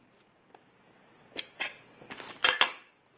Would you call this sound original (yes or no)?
yes